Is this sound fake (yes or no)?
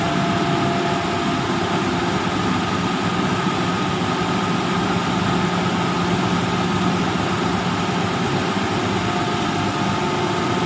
no